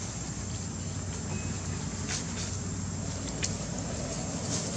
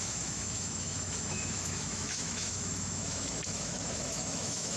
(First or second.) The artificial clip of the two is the second